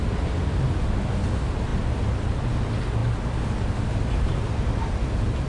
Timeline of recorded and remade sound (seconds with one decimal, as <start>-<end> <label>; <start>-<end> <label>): 0.0-5.5 recorded